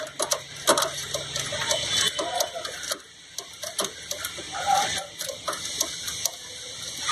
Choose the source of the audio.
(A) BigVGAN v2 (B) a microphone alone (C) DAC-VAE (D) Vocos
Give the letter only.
B